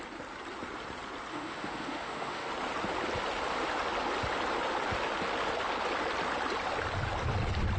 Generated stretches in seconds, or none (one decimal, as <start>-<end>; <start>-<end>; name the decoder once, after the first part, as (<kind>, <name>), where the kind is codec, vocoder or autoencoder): 1.3-2.5 (autoencoder, DAC-VAE)